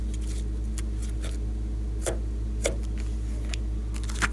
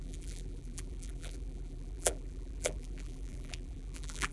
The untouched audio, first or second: first